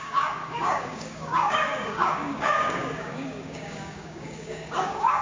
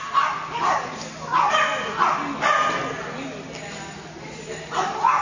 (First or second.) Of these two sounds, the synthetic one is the first